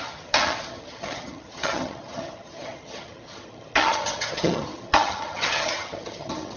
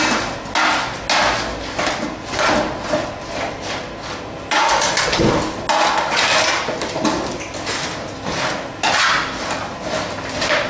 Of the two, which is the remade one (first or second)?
first